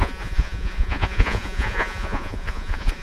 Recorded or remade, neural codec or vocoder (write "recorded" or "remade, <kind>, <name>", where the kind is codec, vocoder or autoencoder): remade, vocoder, Vocos